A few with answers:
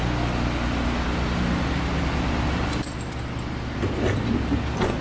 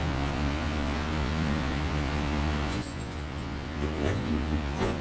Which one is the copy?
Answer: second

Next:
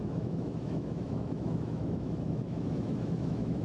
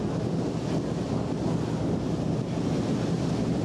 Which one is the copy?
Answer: first